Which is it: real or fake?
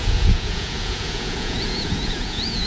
fake